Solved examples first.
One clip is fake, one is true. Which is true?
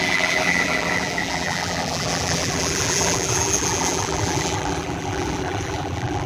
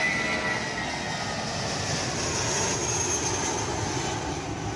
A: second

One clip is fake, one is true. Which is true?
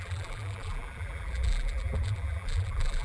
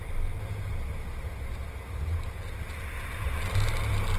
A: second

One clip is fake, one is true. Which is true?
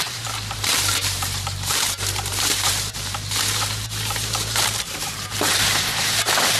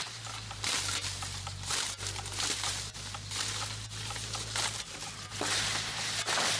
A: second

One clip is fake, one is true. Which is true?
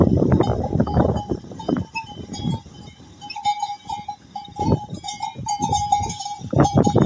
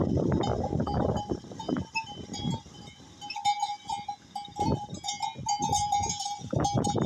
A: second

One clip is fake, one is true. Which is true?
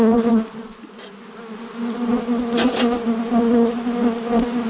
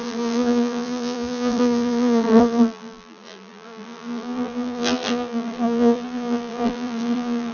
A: first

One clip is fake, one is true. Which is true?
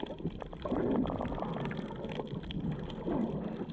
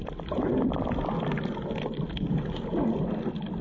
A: second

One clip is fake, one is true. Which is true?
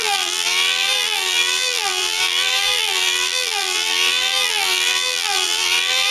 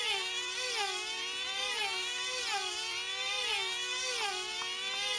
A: second